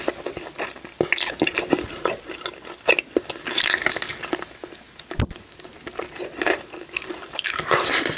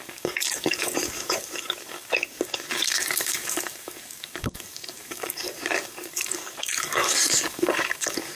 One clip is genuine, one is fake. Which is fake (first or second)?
second